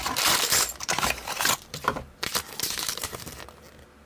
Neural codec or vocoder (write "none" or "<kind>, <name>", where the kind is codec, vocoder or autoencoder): vocoder, BigVGAN v2